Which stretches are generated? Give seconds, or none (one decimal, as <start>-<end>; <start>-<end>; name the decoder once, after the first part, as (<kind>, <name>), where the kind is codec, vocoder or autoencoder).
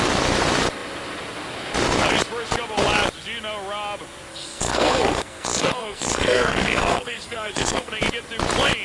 4.3-7.9 (codec, SNAC)